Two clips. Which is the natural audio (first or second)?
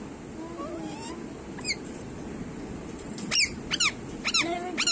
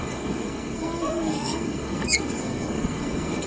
first